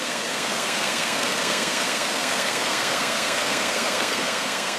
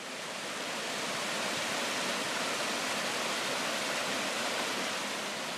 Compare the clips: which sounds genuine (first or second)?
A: second